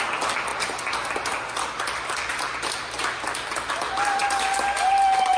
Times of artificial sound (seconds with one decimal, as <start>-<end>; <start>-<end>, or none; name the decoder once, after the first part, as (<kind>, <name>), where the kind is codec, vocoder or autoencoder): none